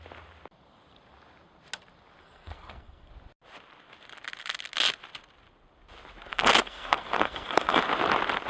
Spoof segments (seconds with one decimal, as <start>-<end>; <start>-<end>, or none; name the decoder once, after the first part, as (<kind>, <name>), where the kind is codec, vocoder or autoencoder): 2.2-3.1 (codec, SNAC); 6.3-7.8